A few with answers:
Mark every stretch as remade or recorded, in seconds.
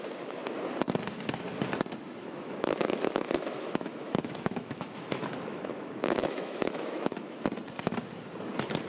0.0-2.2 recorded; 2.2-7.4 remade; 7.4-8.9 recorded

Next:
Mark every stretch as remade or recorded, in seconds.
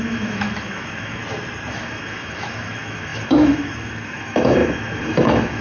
0.0-1.2 remade; 1.2-1.7 recorded; 1.7-5.6 remade